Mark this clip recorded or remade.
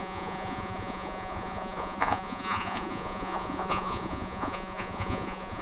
remade